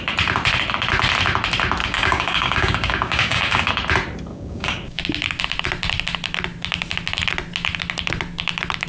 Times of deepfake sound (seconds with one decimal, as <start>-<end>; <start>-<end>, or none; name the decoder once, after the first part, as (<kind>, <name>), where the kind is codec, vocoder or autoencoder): 1.8-3.7 (codec, DAC); 4.3-5.0